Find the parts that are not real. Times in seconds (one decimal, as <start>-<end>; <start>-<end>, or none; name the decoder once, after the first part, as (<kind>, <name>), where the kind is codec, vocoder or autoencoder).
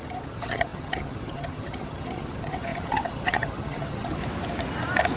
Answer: 0.0-4.2 (vocoder, HiFi-GAN)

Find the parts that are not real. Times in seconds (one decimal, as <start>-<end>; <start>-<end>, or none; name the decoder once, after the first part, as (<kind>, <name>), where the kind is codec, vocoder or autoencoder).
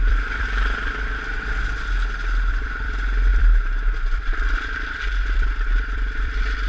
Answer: 0.0-1.3 (vocoder, BigVGAN v2); 2.5-6.7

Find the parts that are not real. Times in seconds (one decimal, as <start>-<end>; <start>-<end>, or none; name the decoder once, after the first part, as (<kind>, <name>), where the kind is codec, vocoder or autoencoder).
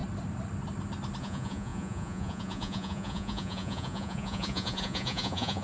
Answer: 1.2-5.6 (vocoder, Vocos)